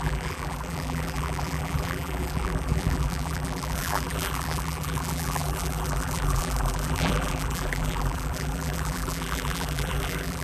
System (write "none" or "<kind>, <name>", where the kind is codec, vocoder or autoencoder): vocoder, BigVGAN v2